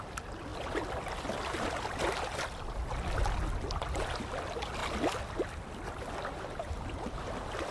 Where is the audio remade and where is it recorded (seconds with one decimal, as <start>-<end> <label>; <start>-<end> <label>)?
0.0-7.7 recorded